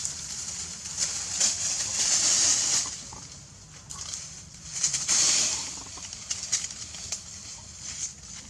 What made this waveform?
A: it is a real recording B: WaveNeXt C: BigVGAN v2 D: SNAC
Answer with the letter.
A